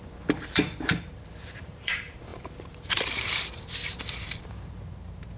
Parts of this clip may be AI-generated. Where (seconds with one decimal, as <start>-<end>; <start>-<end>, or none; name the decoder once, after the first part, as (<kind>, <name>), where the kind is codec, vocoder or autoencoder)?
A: 0.0-5.4 (vocoder, BigVGAN v2)